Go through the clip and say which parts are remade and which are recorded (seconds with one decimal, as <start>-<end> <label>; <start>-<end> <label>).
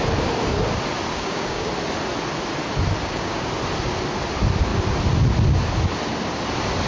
0.0-1.1 recorded; 1.1-1.7 remade; 1.7-3.0 recorded; 3.0-3.5 remade; 3.5-6.9 recorded